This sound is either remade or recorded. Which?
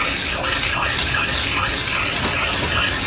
recorded